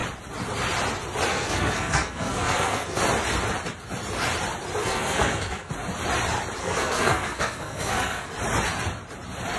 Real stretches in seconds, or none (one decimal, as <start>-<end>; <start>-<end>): 0.0-1.3; 3.0-4.8; 5.7-6.6; 8.3-9.6